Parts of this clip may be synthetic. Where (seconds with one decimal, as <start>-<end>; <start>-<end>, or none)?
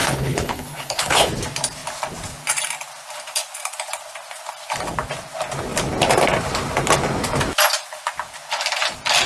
0.0-1.3